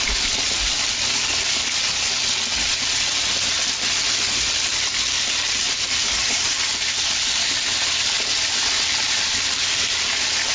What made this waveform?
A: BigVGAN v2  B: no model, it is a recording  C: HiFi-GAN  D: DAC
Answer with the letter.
B